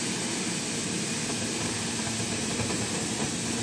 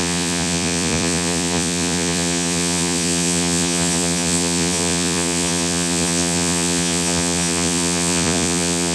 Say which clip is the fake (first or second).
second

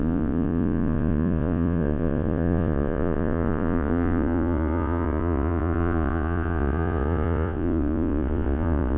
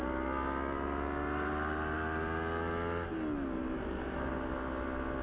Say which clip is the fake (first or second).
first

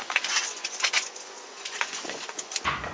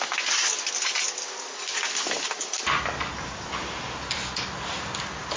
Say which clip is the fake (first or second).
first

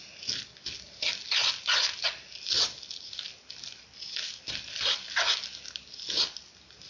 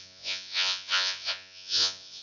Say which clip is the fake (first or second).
second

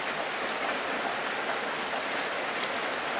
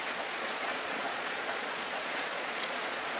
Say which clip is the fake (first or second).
second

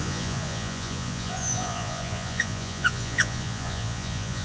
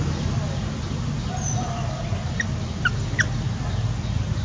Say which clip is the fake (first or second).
first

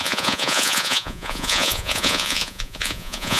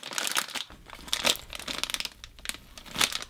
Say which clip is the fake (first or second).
first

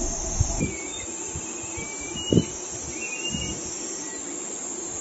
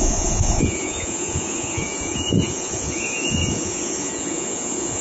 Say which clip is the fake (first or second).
second